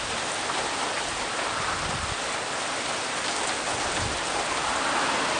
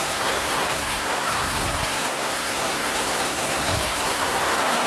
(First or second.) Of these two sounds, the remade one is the second